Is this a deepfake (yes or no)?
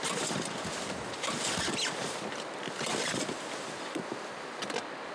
no